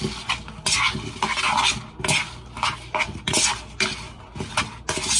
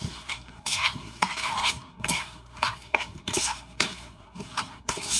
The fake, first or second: second